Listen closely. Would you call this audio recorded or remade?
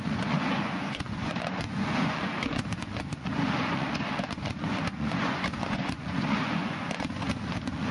remade